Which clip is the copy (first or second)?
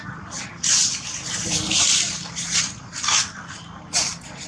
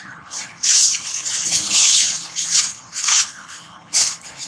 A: second